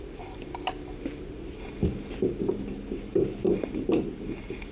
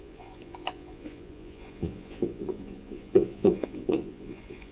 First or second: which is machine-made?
second